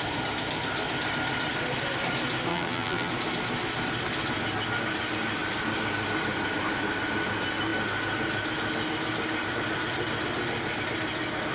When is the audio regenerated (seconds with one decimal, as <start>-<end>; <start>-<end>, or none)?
2.5-3.1